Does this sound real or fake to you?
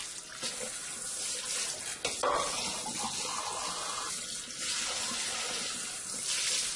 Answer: real